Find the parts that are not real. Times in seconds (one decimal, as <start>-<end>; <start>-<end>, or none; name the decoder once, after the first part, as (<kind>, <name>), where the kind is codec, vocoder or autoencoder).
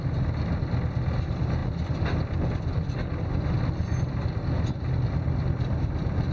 none